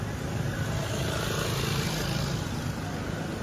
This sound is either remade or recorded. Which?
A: recorded